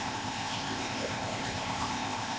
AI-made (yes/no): yes